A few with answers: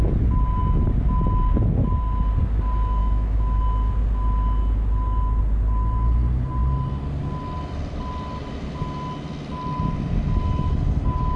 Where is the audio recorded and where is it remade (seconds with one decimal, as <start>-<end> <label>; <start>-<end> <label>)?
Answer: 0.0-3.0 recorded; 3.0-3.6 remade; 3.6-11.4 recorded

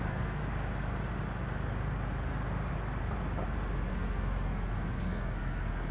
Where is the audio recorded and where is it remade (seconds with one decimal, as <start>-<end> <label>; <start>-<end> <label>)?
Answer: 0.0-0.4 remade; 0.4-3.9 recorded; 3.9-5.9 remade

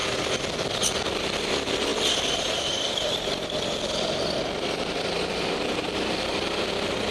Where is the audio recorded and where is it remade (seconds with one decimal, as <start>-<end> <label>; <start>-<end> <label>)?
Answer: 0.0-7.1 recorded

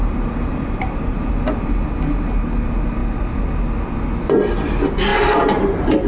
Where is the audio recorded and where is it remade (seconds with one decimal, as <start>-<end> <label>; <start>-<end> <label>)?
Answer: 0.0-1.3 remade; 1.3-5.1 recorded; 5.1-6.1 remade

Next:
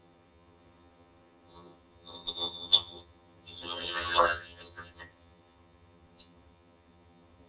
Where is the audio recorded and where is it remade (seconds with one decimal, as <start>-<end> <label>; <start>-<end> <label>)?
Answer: 0.0-7.5 remade

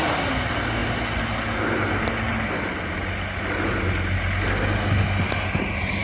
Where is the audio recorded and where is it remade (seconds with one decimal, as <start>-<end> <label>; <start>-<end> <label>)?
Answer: 0.0-6.0 recorded

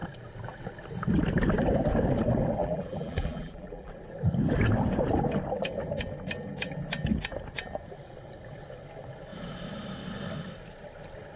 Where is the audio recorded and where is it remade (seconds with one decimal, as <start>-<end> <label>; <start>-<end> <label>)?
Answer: 0.0-2.6 recorded; 2.6-3.9 remade; 3.9-11.4 recorded

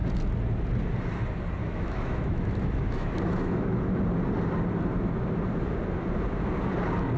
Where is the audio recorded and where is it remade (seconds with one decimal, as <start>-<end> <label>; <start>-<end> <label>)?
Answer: 0.0-1.6 recorded; 1.6-4.0 remade; 4.0-7.2 recorded